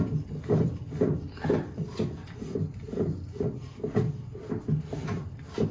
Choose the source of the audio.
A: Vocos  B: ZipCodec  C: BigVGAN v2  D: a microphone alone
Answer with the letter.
D